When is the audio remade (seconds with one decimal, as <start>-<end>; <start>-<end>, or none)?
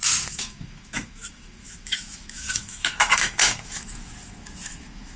0.0-5.2